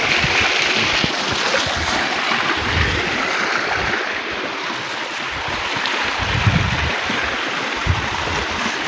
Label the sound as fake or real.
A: real